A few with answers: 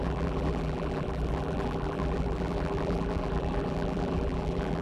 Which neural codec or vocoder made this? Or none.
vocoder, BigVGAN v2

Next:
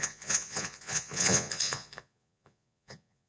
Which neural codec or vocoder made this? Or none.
vocoder, Vocos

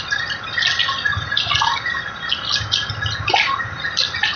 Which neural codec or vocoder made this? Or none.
none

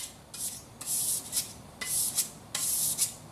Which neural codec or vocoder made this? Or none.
none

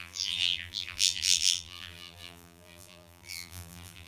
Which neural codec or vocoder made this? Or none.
vocoder, BigVGAN v2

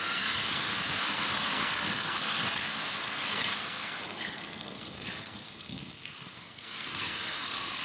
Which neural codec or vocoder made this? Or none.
codec, SNAC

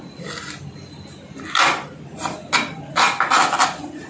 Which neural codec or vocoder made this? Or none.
none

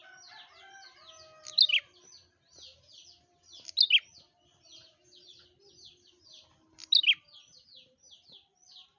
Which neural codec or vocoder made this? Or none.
none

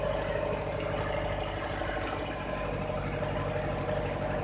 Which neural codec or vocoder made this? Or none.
none